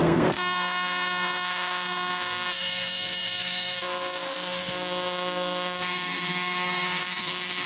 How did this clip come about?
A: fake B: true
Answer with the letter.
A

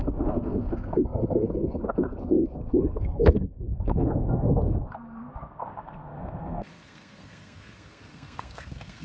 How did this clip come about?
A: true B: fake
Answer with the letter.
B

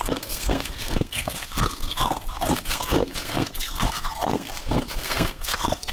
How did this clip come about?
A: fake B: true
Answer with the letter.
A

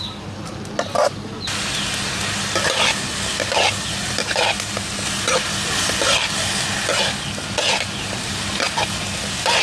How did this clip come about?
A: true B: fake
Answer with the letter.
A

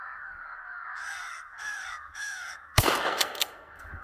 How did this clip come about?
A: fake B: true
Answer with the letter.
A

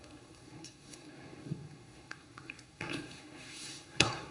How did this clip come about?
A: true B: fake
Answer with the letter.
B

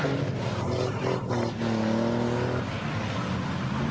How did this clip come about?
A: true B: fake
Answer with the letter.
A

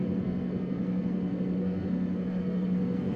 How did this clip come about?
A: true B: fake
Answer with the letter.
B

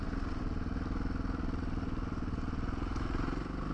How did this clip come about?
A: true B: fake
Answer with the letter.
A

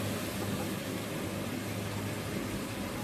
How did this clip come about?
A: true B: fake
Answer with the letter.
A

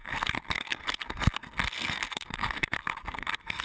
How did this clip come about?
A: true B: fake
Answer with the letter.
B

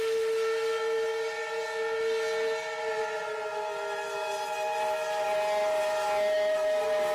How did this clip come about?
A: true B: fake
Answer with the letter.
A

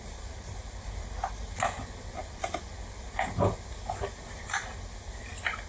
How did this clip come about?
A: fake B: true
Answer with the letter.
B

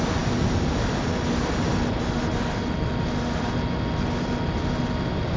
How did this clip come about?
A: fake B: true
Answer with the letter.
B